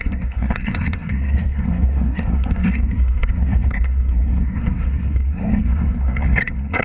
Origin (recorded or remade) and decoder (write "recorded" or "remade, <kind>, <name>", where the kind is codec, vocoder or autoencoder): remade, codec, SNAC